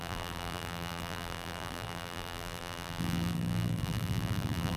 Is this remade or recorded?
remade